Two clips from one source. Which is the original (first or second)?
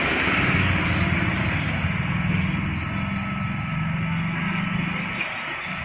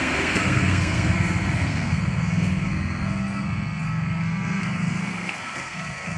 first